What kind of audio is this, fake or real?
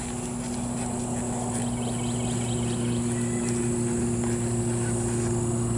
real